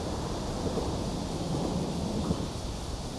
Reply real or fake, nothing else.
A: real